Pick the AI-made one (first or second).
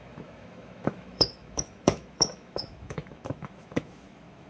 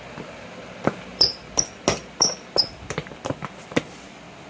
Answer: first